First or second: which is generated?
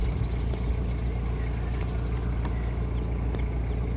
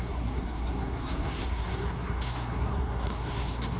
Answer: second